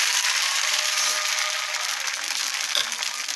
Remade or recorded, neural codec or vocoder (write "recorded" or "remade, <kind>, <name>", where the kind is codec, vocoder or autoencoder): recorded